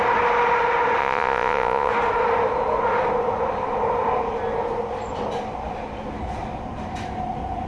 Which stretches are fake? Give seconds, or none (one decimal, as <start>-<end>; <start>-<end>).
1.0-1.9